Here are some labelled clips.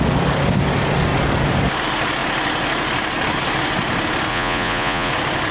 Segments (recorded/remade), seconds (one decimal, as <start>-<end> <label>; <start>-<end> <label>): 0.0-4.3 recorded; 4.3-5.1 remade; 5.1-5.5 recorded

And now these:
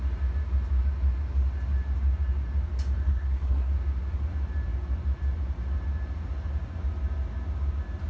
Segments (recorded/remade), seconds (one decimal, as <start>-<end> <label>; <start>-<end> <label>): 0.0-3.0 recorded; 3.0-3.7 remade; 3.7-8.1 recorded

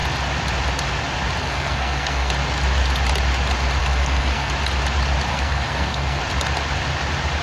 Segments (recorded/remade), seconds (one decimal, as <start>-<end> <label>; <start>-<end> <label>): 0.0-1.4 recorded; 1.4-2.3 remade; 2.3-3.8 recorded; 3.8-4.5 remade; 4.5-5.3 recorded; 5.3-6.2 remade; 6.2-7.4 recorded

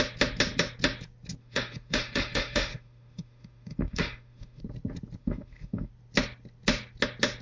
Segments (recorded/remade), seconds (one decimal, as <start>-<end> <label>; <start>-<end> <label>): 0.0-1.4 recorded; 1.4-4.6 remade; 4.6-5.2 recorded; 5.2-5.9 remade; 5.9-7.4 recorded

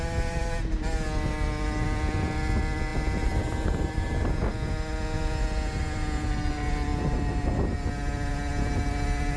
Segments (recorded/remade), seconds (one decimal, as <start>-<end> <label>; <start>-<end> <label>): 0.0-9.4 recorded

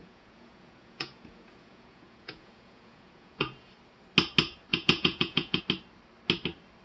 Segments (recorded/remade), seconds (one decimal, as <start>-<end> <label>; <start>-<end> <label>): 0.0-3.7 remade; 3.7-4.7 recorded; 4.7-5.6 remade; 5.6-6.8 recorded

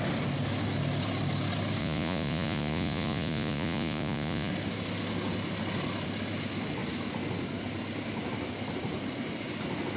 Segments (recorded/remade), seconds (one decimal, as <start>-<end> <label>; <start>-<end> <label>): 0.0-1.8 recorded; 1.8-4.5 remade; 4.5-10.0 recorded

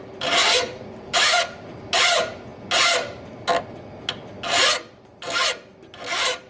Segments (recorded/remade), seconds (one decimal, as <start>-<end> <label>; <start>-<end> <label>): 0.0-0.4 recorded; 0.4-1.2 remade; 1.2-6.5 recorded